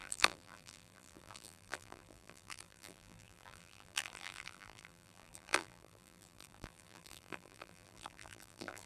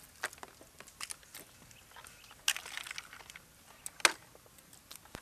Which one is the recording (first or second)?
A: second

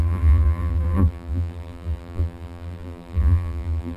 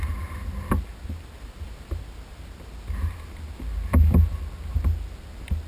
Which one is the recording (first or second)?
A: second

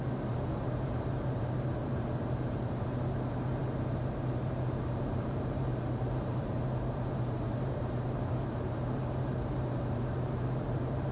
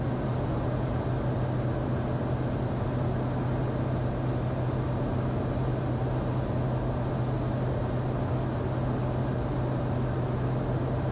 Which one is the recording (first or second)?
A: second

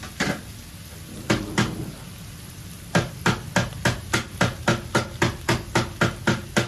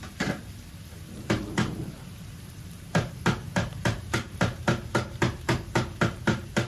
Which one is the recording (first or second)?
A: first